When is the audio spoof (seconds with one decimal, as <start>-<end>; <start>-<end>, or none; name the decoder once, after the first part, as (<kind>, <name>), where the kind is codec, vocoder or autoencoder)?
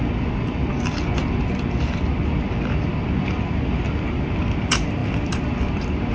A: 0.0-0.7 (vocoder, BigVGAN v2); 4.4-6.1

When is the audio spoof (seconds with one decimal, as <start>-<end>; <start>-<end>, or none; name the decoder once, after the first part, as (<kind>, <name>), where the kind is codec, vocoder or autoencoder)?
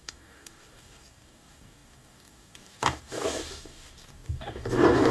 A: 0.0-5.1 (codec, DAC)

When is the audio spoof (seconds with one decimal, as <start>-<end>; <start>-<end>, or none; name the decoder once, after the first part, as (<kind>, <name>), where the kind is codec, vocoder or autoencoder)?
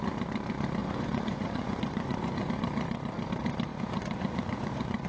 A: 0.8-2.5 (vocoder, Vocos); 3.7-5.1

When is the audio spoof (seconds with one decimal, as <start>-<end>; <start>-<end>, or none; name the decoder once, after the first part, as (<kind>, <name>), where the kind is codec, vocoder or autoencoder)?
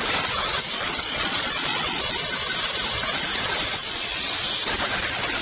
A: 0.7-2.1 (vocoder, Vocos); 3.8-4.3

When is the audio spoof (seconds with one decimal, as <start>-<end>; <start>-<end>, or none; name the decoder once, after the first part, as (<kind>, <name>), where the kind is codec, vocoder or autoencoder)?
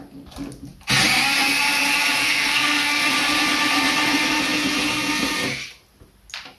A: 2.2-3.1 (codec, SNAC)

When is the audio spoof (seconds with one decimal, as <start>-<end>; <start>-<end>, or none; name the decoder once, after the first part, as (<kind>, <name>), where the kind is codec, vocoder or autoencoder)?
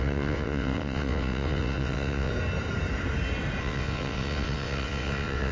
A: 0.0-2.3 (vocoder, WaveNeXt); 3.6-5.5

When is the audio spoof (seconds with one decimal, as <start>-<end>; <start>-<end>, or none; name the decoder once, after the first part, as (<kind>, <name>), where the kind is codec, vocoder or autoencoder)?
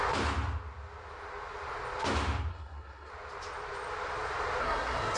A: 2.5-3.1 (codec, SNAC); 4.6-5.2